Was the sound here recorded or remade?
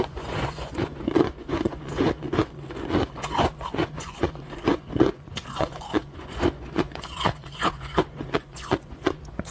remade